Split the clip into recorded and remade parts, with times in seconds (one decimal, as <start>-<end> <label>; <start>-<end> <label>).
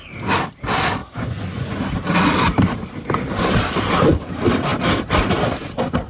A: 0.0-1.0 recorded; 1.0-1.8 remade; 1.8-6.1 recorded